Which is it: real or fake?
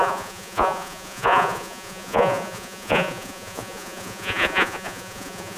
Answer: fake